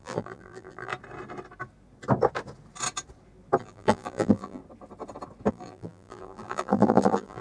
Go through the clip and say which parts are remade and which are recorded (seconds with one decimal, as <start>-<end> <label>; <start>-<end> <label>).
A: 0.0-0.9 remade; 0.9-3.6 recorded; 3.6-4.6 remade; 4.6-5.5 recorded; 5.5-7.4 remade